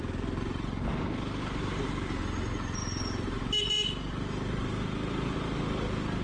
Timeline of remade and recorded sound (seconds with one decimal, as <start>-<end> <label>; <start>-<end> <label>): 0.0-2.8 recorded; 2.8-3.4 remade; 3.4-6.2 recorded